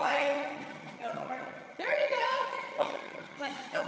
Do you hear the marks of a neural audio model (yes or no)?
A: yes